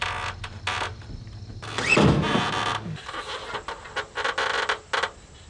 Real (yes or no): yes